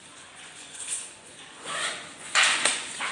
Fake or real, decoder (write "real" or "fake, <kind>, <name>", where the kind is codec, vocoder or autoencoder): fake, vocoder, Vocos